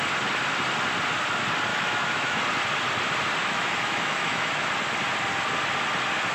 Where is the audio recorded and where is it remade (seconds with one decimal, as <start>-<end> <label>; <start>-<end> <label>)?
0.0-1.7 recorded; 1.7-2.4 remade; 2.4-3.4 recorded; 3.4-4.7 remade; 4.7-6.3 recorded